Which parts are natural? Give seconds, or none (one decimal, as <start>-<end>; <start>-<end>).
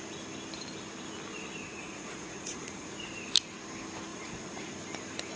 0.0-1.7; 3.1-4.1; 4.7-5.4